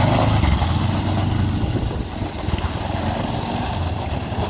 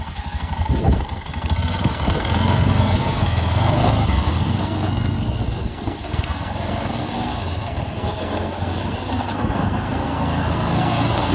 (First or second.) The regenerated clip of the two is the second